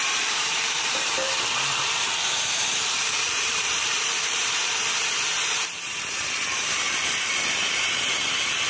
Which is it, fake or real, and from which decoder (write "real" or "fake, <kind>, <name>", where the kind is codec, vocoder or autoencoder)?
fake, vocoder, BigVGAN v2